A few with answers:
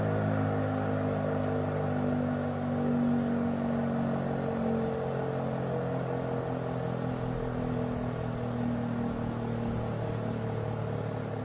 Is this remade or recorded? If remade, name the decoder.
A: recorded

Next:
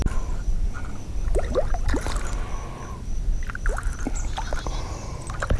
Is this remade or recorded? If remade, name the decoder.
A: recorded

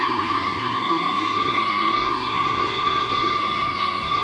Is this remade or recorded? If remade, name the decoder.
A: remade, codec, SNAC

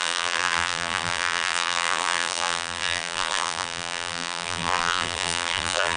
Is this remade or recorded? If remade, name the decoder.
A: remade, vocoder, BigVGAN v2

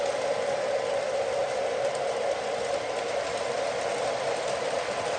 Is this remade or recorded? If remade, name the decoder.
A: recorded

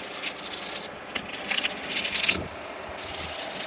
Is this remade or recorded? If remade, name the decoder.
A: recorded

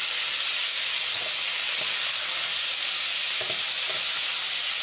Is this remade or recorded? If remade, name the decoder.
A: recorded